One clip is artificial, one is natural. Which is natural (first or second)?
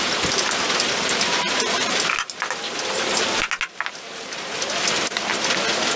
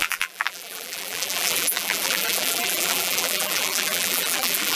first